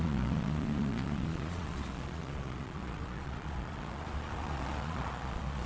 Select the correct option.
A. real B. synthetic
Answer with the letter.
B